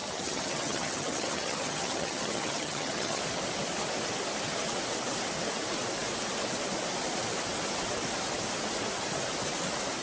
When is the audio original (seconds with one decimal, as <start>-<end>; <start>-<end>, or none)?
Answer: 3.2-10.0